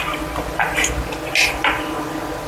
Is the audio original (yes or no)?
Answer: yes